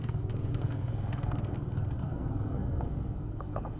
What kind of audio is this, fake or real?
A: fake